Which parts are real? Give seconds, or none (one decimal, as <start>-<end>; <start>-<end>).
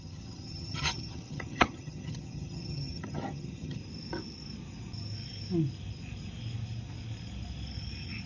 3.8-8.3